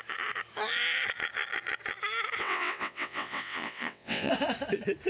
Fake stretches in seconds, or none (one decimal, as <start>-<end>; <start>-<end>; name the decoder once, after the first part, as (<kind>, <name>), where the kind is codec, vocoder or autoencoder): 2.4-4.3 (vocoder, WaveNeXt)